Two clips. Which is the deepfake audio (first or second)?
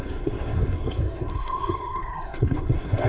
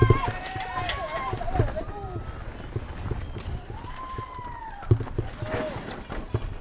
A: first